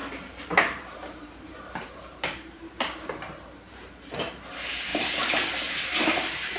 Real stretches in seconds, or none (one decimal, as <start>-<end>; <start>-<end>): none